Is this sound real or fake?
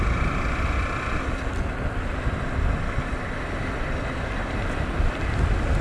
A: real